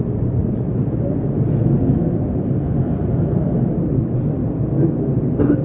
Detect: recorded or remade recorded